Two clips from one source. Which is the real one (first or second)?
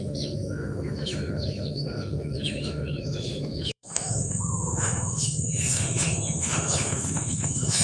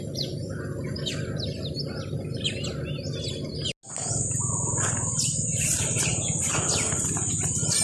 second